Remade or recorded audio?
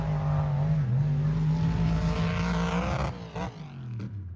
recorded